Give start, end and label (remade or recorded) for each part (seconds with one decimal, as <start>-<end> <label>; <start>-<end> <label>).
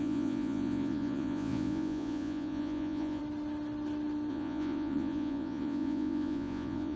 0.0-3.2 remade; 3.2-4.3 recorded; 4.3-7.0 remade